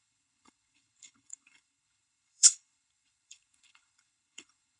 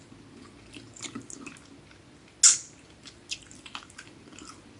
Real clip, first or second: second